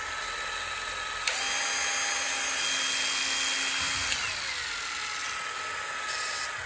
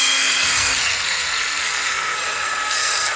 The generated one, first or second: second